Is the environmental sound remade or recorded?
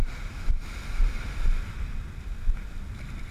recorded